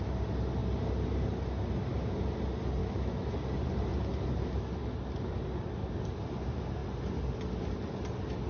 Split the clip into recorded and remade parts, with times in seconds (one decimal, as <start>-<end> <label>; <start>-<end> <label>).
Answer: 0.0-2.8 recorded; 2.8-3.3 remade; 3.3-8.5 recorded